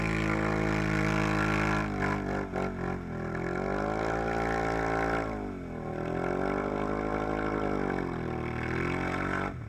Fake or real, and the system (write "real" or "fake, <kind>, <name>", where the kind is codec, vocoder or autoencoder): real